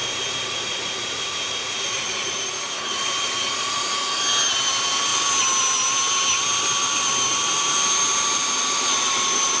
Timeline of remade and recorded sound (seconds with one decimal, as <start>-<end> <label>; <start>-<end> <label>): 0.0-4.2 remade; 4.2-9.6 recorded